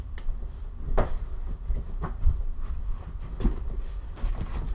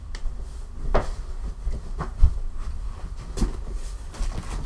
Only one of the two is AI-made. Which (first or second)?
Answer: first